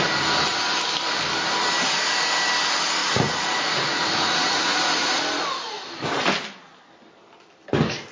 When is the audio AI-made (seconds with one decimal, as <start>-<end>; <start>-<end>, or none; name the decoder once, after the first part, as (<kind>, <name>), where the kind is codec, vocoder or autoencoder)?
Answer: 3.0-5.2 (vocoder, Vocos)